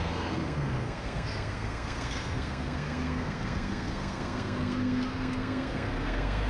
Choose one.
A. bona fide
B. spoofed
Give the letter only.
B